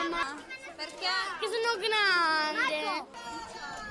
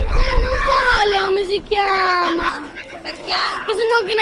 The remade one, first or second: second